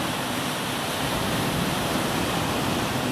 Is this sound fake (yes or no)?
no